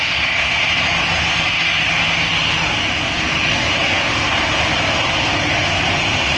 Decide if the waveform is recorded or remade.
recorded